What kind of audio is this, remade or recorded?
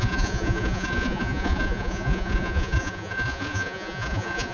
remade